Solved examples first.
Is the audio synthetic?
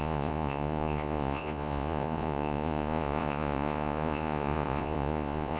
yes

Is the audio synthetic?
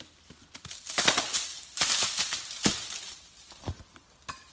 no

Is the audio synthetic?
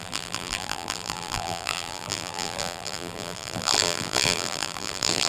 yes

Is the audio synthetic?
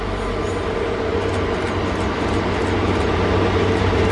no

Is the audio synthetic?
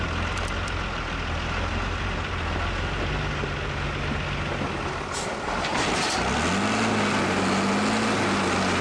no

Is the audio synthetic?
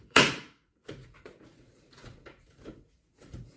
yes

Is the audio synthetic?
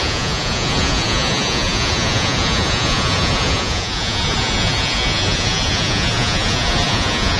yes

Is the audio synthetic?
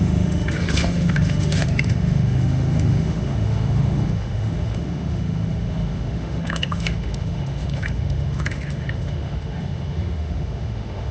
yes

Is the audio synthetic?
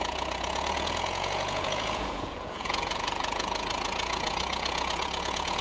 yes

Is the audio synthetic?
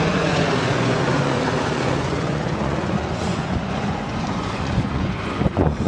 yes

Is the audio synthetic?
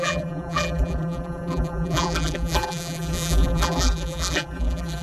yes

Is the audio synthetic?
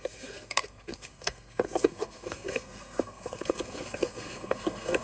yes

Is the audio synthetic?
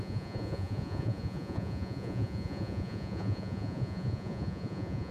yes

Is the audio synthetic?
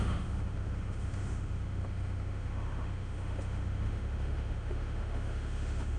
yes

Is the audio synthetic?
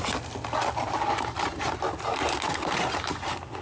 no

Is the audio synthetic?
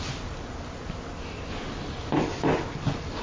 no